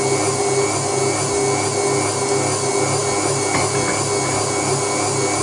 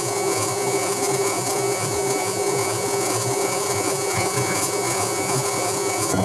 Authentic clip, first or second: first